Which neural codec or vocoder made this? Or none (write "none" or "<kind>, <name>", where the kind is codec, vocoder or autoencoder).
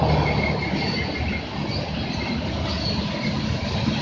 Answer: none